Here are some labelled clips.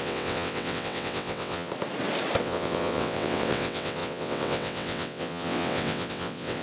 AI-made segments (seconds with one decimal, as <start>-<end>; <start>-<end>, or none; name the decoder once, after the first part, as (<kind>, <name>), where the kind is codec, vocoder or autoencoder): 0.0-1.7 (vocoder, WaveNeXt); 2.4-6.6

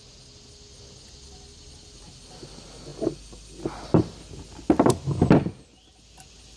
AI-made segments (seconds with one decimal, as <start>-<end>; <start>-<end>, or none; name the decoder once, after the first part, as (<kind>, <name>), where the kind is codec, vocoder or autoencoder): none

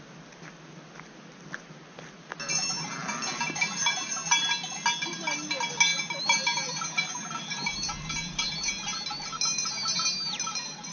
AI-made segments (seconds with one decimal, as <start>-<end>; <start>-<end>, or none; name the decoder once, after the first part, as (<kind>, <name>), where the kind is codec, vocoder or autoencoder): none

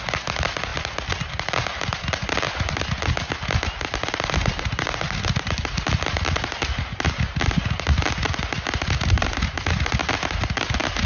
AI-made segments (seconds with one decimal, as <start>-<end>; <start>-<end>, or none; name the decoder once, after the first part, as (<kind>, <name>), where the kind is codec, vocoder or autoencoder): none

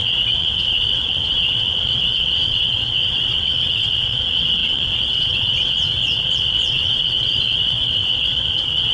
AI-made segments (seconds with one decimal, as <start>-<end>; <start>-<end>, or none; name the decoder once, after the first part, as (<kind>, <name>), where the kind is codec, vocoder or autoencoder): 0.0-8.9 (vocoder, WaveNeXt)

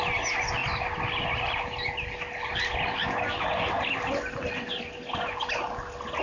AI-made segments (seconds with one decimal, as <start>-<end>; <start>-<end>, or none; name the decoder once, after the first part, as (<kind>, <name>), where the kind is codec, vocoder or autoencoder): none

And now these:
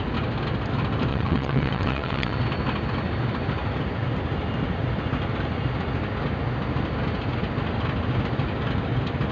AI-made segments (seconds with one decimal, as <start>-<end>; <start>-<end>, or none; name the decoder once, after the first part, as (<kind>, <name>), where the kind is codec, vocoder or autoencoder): 1.1-2.4 (vocoder, WaveNeXt)

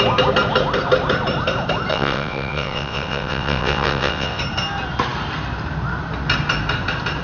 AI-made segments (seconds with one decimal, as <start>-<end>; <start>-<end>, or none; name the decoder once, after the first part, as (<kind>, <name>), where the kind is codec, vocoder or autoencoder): 1.9-4.4 (vocoder, WaveNeXt)